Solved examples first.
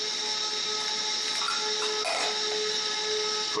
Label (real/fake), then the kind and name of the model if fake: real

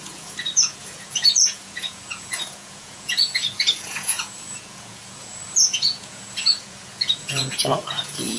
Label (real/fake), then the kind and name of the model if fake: fake, vocoder, Vocos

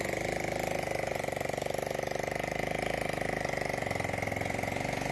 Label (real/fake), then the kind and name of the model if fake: real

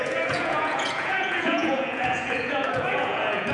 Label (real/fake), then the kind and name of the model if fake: fake, vocoder, Vocos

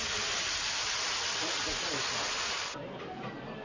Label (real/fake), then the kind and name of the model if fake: real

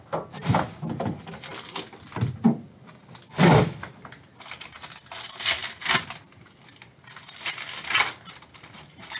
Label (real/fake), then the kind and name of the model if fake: real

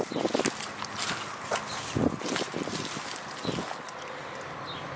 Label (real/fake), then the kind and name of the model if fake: real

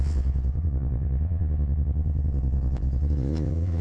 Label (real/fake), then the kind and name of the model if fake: fake, vocoder, Vocos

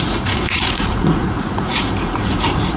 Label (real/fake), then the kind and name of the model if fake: fake, vocoder, Vocos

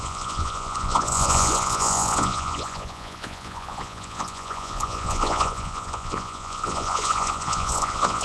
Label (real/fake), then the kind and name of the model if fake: fake, vocoder, Vocos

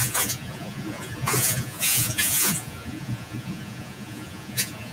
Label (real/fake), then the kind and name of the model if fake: fake, vocoder, Vocos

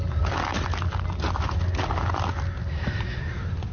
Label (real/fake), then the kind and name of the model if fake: real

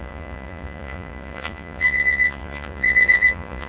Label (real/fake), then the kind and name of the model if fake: fake, vocoder, Vocos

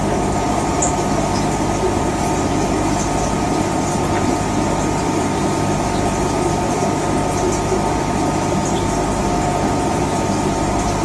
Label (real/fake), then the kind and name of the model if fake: real